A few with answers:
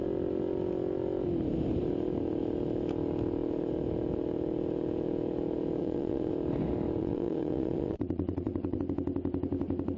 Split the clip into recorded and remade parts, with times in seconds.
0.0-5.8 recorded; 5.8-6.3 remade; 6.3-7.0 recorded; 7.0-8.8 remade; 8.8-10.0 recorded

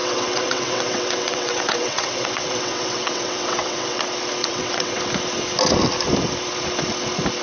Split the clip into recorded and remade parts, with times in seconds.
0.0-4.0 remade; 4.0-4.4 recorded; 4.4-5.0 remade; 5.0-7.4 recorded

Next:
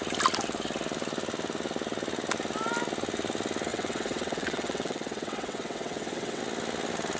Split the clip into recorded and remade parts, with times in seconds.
0.0-3.7 recorded; 3.7-6.4 remade; 6.4-7.2 recorded

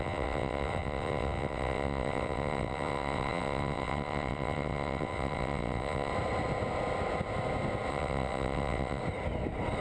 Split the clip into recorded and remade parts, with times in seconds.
0.0-6.1 remade; 6.1-7.9 recorded; 7.9-9.0 remade; 9.0-9.8 recorded

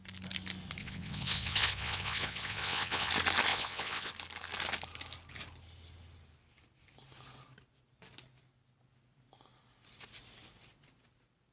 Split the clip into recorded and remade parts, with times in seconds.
0.0-0.8 recorded; 0.8-3.1 remade; 3.1-3.5 recorded; 3.5-4.1 remade; 4.1-11.5 recorded

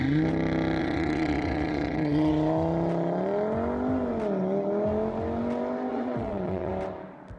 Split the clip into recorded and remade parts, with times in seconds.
0.0-0.8 recorded; 0.8-2.3 remade; 2.3-5.9 recorded; 5.9-6.7 remade; 6.7-7.4 recorded

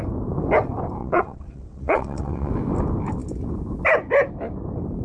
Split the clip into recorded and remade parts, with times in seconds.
0.0-1.0 recorded; 1.0-2.5 remade; 2.5-5.0 recorded